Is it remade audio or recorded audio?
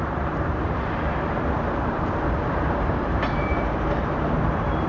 remade